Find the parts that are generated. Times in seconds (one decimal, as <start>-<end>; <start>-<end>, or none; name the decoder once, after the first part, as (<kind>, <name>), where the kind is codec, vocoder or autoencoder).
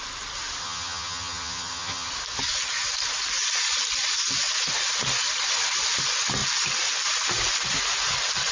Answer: 0.6-2.1 (vocoder, HiFi-GAN)